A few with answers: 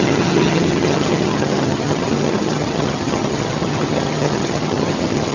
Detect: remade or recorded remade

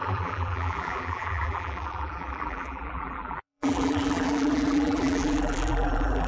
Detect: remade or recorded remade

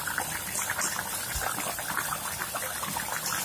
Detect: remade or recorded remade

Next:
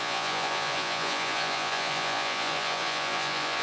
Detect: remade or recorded remade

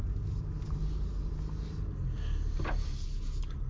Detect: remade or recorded recorded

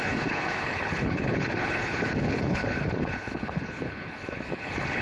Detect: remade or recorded remade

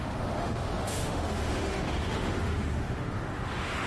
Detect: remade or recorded remade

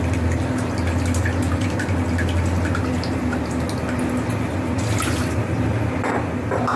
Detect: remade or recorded recorded